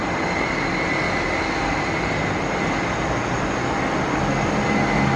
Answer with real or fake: real